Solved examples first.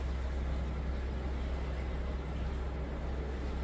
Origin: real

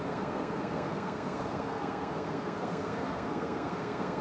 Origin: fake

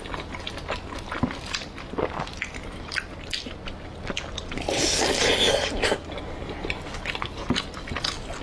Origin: real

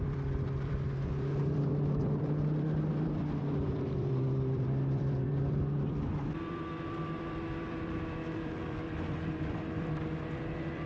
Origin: fake